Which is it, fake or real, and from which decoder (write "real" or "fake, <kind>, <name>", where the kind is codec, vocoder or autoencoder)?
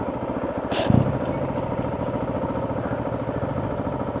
real